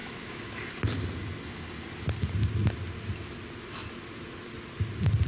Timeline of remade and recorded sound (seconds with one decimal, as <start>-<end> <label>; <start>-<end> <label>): 0.0-0.7 remade; 0.7-5.3 recorded